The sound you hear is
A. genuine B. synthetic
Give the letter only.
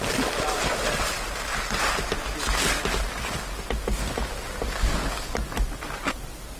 A